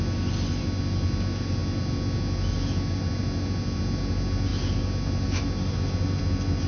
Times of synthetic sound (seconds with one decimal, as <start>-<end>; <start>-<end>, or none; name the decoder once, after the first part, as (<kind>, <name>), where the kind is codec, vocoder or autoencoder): none

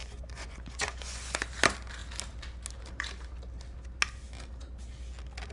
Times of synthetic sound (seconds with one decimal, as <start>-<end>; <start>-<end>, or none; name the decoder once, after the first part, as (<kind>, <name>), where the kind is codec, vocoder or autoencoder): 0.0-1.4 (vocoder, Vocos)

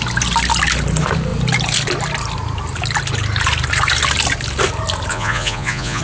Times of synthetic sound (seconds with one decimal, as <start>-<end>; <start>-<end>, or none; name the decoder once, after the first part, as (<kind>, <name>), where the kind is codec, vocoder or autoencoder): 5.1-6.0 (vocoder, Vocos)

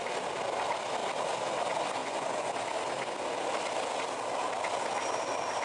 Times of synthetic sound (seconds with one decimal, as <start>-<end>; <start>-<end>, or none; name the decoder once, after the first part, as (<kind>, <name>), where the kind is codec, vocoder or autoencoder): 2.0-2.5 (vocoder, Vocos)

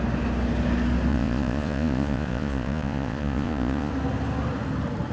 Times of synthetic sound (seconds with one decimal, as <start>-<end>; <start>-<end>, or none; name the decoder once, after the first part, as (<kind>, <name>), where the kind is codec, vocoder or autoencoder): 1.1-3.9 (vocoder, Vocos)

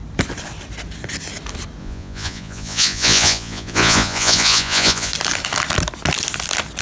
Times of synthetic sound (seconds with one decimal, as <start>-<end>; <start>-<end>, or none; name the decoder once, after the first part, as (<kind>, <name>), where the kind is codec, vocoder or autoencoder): 1.8-5.1 (vocoder, Vocos)

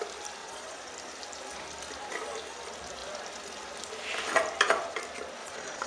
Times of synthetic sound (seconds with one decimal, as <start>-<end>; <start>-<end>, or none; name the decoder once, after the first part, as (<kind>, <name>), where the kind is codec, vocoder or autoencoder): 0.4-0.9 (vocoder, Vocos); 5.4-5.9

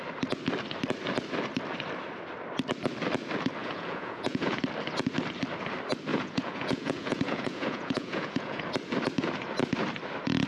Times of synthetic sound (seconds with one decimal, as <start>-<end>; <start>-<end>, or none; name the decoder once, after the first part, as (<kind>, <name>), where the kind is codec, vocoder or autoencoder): 3.6-4.6 (vocoder, Vocos); 6.1-8.6